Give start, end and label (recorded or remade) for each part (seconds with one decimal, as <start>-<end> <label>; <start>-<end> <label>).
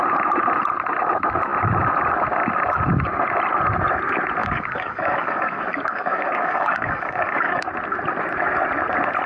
0.0-4.4 recorded; 4.4-7.7 remade; 7.7-9.3 recorded